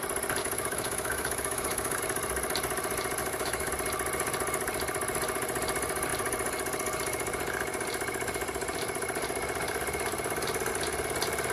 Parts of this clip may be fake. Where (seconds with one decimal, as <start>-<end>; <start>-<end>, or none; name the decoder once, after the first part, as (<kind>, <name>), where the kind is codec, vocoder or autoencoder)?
0.4-2.0 (autoencoder, DAC-VAE); 3.2-3.7